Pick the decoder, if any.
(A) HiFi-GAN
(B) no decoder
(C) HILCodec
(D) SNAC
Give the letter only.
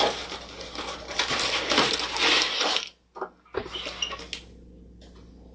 B